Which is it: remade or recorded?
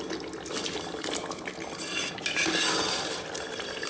recorded